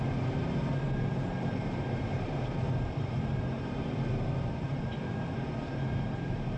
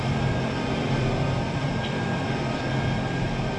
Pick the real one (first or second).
second